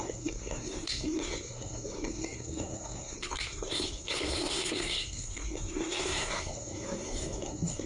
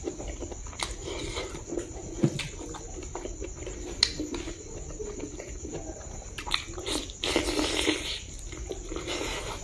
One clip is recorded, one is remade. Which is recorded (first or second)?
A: second